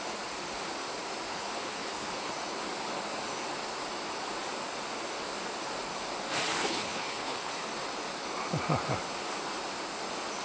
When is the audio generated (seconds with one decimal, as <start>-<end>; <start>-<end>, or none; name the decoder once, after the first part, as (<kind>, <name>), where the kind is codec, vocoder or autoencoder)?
1.3-2.3 (codec, HILCodec); 6.5-7.5